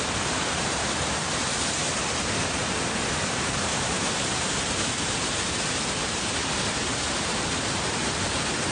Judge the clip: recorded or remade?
remade